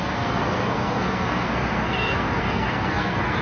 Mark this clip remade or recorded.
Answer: remade